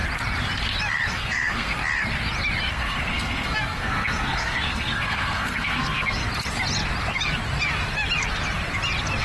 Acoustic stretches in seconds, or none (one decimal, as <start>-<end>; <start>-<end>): 0.0-1.1; 1.8-2.7; 6.2-9.2